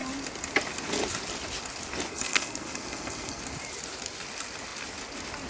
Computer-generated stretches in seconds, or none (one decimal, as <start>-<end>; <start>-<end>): 2.1-3.4